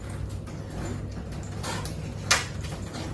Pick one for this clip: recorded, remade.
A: recorded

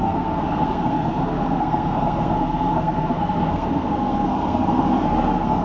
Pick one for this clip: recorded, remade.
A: remade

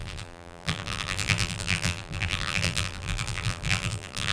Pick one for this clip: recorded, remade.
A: remade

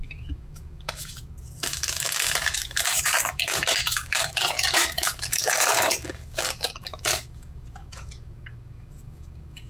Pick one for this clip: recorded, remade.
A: remade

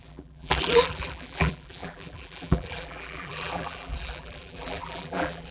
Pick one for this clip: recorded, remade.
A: remade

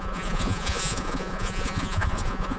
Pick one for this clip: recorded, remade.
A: remade